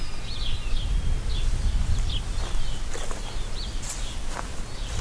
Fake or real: real